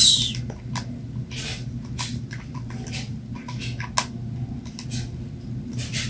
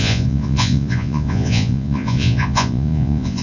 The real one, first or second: first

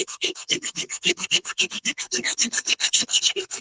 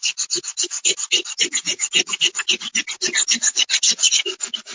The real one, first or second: second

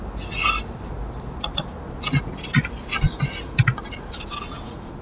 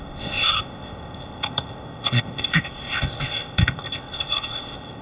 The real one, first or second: first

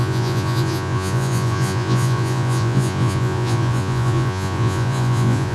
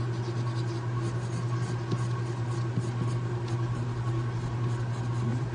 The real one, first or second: second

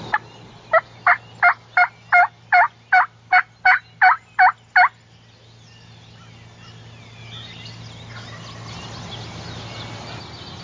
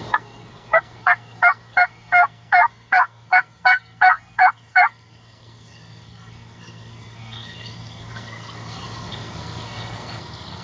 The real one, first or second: first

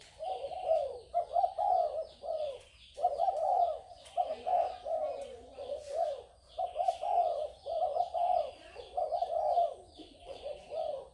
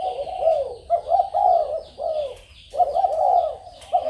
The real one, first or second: second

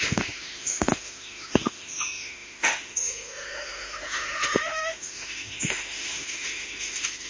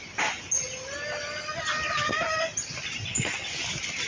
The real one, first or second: second